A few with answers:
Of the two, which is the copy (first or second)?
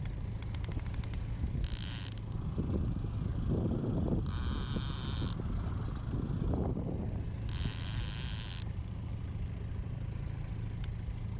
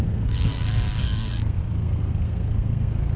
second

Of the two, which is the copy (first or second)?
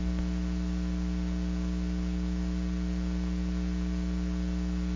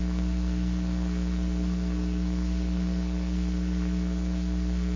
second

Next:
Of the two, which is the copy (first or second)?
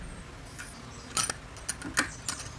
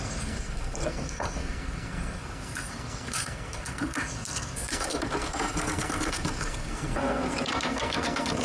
second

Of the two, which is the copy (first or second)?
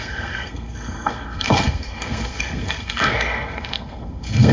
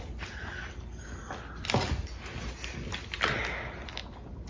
first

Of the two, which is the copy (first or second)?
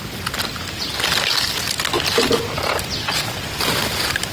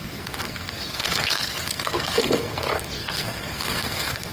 second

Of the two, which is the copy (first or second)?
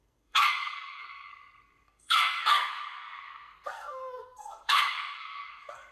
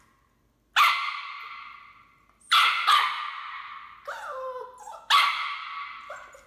first